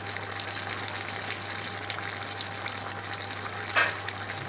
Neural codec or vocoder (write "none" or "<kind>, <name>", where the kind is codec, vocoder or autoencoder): none